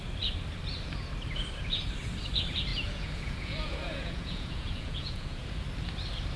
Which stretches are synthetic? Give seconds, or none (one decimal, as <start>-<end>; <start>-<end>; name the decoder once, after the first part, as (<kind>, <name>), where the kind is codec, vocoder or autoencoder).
2.7-5.5 (vocoder, Vocos)